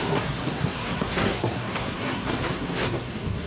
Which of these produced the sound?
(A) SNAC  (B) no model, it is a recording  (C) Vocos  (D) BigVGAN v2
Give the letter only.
A